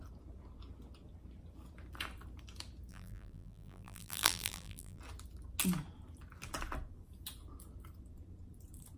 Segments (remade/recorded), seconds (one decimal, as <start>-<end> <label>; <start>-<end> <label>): 0.0-2.9 recorded; 2.9-5.0 remade; 5.0-9.0 recorded